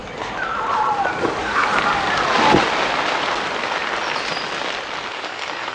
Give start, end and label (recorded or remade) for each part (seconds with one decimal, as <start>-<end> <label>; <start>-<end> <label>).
0.0-1.2 recorded; 1.2-1.7 remade; 1.7-5.1 recorded; 5.1-5.7 remade